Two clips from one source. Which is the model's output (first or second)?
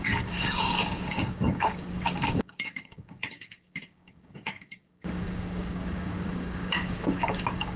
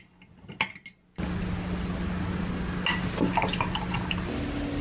first